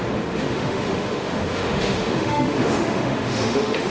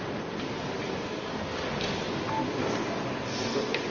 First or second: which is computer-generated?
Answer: first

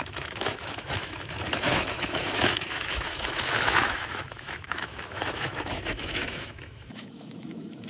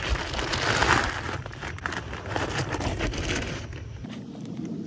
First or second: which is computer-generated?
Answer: first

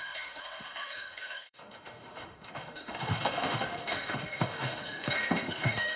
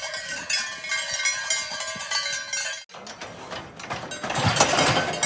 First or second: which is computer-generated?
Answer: first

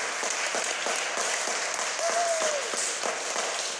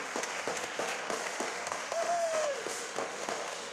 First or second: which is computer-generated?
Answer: second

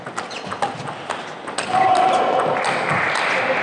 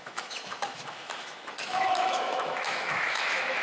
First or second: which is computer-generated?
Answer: second